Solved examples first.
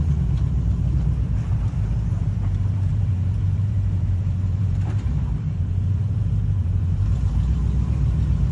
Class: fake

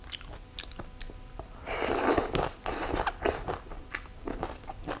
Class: real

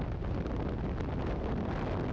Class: real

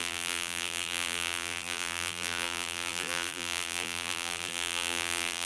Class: fake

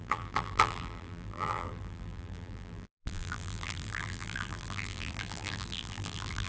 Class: fake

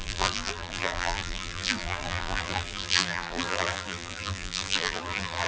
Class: fake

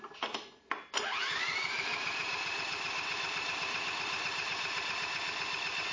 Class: real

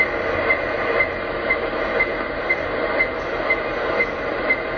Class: real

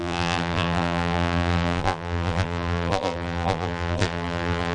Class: fake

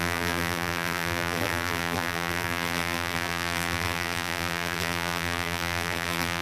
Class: fake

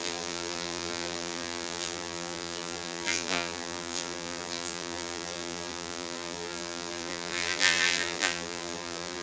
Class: fake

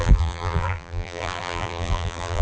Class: fake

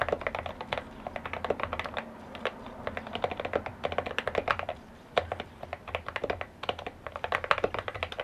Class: real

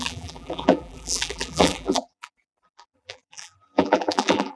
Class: fake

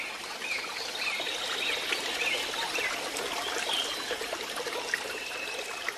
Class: real